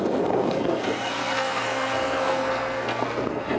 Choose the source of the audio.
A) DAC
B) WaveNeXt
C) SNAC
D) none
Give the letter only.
C